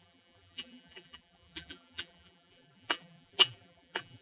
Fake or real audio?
fake